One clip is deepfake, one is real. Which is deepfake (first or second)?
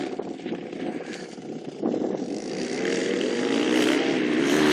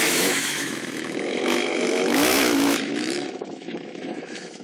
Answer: second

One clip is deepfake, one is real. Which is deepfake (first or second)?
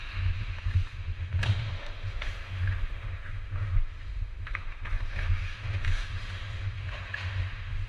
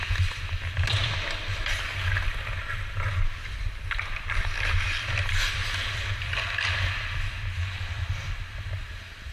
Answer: first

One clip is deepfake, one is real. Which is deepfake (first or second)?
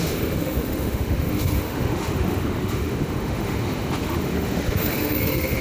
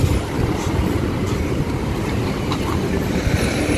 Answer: first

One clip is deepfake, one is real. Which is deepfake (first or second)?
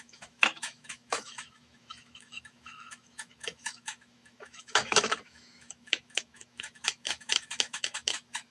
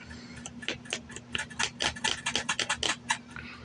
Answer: first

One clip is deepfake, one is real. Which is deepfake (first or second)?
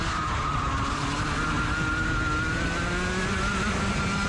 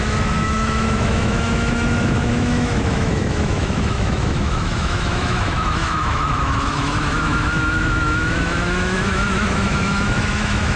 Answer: second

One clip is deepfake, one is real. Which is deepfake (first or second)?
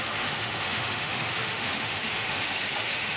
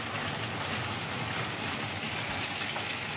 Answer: first